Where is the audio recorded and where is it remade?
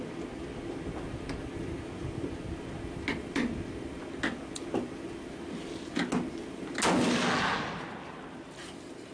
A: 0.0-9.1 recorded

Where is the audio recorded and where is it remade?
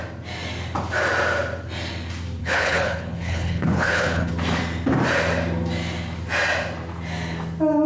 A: 0.0-2.4 recorded; 2.4-4.3 remade; 4.3-7.9 recorded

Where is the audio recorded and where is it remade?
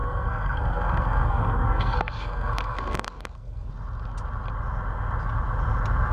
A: 0.0-3.7 remade; 3.7-6.1 recorded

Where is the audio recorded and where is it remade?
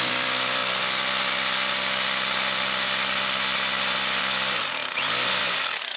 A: 0.0-0.6 remade; 0.6-4.2 recorded; 4.2-4.8 remade; 4.8-5.4 recorded; 5.4-6.0 remade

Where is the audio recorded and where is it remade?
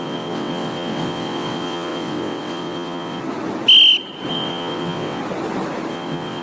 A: 0.0-3.2 remade; 3.2-4.3 recorded; 4.3-5.2 remade; 5.2-5.9 recorded; 5.9-6.4 remade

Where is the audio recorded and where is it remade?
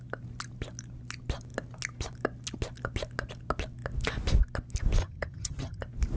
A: 0.0-5.0 recorded; 5.0-5.8 remade; 5.8-6.2 recorded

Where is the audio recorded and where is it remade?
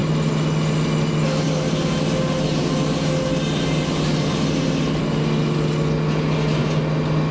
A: 0.0-7.3 recorded